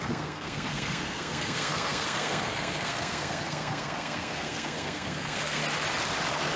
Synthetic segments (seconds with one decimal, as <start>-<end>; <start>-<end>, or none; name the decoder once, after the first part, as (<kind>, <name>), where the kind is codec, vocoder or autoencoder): 0.0-5.6 (codec, SNAC)